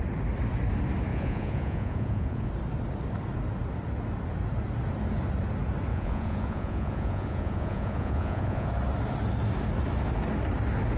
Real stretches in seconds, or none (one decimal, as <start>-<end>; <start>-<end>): 0.0-1.1; 2.5-5.9; 8.7-11.0